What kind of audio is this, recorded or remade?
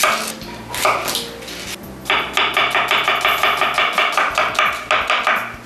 recorded